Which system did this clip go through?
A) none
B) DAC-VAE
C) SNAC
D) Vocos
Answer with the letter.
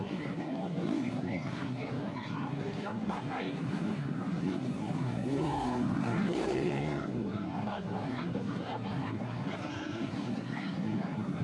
C